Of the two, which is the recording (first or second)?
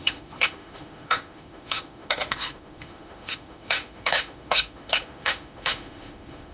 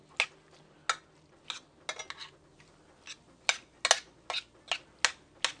second